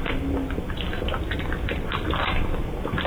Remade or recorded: recorded